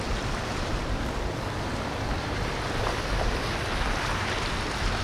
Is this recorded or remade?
recorded